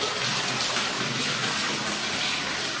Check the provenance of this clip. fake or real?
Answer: real